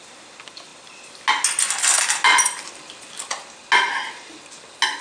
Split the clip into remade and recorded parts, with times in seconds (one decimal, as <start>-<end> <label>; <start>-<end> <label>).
0.0-5.0 recorded